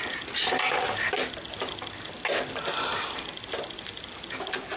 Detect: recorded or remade recorded